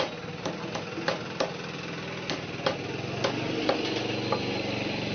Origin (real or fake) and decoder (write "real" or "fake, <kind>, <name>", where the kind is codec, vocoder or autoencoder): real